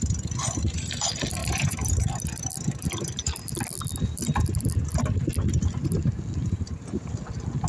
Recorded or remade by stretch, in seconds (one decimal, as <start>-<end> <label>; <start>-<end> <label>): 0.0-1.4 recorded; 1.4-2.1 remade; 2.1-6.4 recorded; 6.4-7.1 remade; 7.1-7.7 recorded